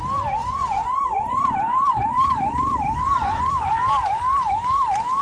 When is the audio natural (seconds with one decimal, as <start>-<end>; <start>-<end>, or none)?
0.0-0.4; 3.5-5.2